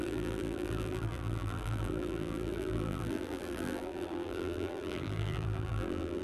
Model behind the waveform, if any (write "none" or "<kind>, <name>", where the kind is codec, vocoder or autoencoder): vocoder, BigVGAN v2